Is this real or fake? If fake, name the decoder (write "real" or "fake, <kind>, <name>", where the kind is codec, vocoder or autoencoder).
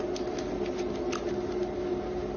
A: real